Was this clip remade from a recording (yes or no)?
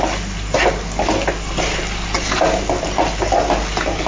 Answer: no